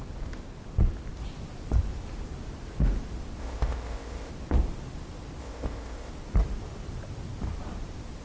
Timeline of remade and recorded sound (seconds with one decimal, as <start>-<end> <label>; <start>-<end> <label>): 0.0-3.4 recorded; 3.4-4.3 remade; 4.3-5.4 recorded; 5.4-6.1 remade; 6.1-8.2 recorded